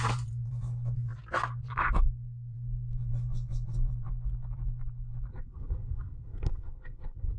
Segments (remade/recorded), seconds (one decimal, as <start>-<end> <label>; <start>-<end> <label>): 0.0-5.3 recorded; 5.3-7.4 remade